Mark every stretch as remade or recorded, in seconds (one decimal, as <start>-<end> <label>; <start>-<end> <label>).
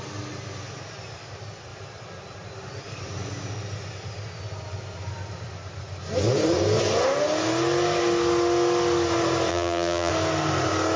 0.0-9.5 recorded; 9.5-10.1 remade; 10.1-11.0 recorded